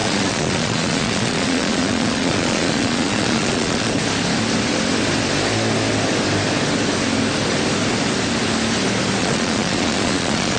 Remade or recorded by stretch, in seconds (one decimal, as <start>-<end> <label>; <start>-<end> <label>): 0.0-3.9 remade; 3.9-9.2 recorded; 9.2-10.6 remade